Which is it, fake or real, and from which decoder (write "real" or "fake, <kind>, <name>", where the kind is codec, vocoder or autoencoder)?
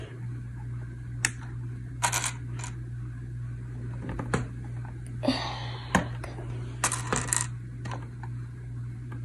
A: real